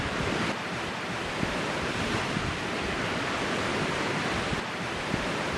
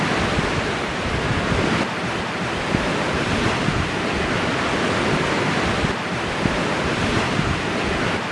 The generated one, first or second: first